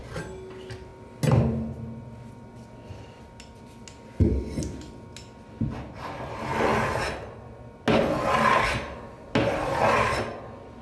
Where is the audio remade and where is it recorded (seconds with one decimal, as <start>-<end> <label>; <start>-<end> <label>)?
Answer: 0.0-10.8 recorded